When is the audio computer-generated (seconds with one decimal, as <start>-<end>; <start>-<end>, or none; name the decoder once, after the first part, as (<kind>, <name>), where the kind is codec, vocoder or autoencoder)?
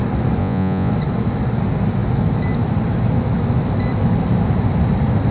0.4-0.9 (vocoder, Vocos)